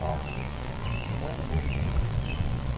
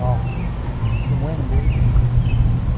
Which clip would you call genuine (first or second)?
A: second